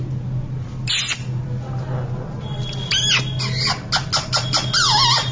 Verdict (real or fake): real